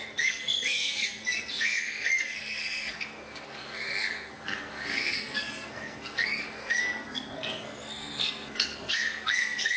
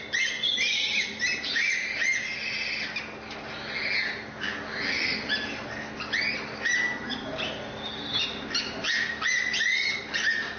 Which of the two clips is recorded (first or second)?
second